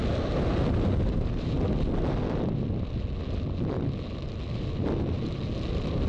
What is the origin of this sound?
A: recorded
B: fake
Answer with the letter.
A